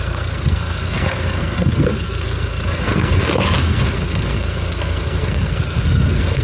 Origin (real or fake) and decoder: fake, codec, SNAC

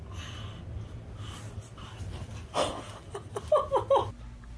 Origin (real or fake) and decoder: real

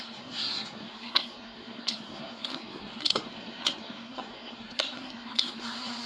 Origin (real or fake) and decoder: fake, codec, SNAC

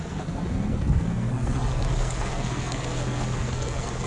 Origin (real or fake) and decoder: fake, codec, SNAC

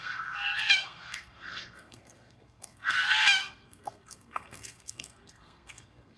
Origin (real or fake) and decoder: fake, codec, SNAC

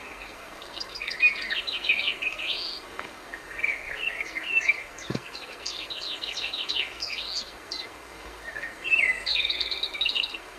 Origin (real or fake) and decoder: fake, codec, SNAC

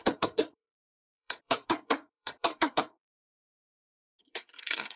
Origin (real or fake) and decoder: fake, codec, SNAC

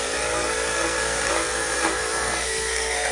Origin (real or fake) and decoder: fake, codec, SNAC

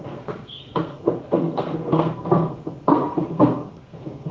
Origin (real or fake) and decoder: fake, codec, SNAC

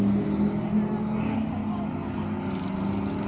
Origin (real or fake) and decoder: real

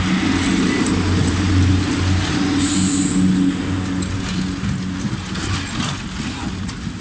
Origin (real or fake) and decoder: real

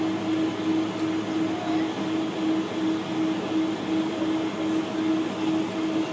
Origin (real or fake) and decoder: real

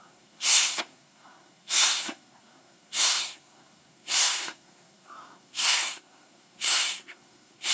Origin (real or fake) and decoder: fake, codec, SNAC